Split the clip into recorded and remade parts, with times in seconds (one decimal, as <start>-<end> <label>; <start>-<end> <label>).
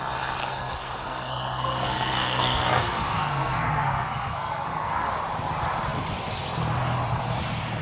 0.0-0.4 recorded; 0.4-5.1 remade; 5.1-7.8 recorded